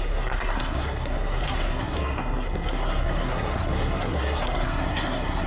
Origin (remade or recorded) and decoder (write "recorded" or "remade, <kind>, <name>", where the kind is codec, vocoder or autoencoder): remade, codec, SNAC